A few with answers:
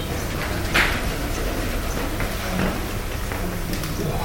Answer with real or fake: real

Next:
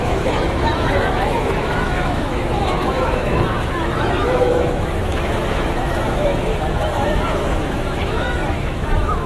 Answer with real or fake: fake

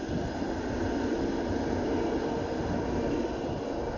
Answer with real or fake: real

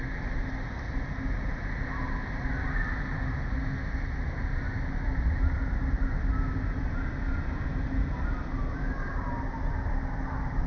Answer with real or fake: real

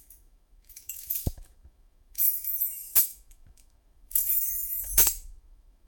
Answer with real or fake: fake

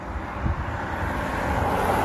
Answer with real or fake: real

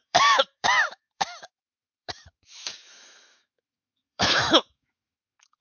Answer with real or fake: fake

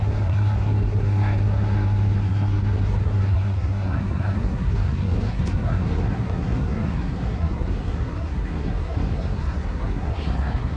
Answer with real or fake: fake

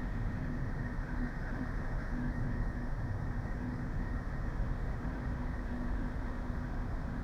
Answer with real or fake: fake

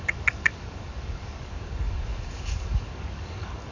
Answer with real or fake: fake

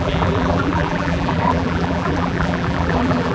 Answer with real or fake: fake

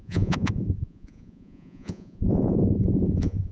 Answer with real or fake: fake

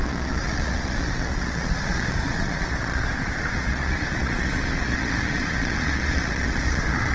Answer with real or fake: fake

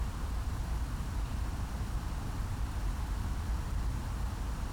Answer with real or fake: real